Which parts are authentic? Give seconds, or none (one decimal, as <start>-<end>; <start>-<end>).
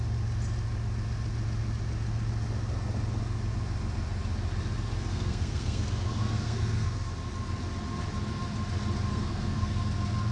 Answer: 0.0-5.1; 7.1-9.1; 9.8-10.3